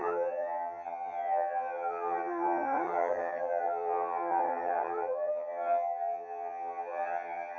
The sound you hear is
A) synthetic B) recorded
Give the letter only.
A